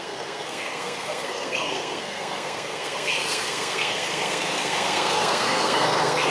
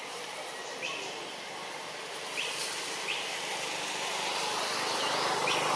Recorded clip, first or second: second